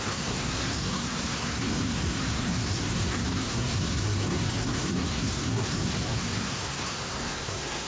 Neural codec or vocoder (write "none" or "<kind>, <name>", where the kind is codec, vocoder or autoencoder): codec, SNAC